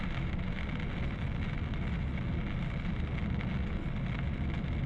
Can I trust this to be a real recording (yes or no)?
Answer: yes